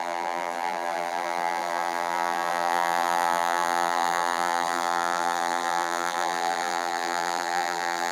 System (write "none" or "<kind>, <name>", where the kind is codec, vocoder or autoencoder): vocoder, BigVGAN v2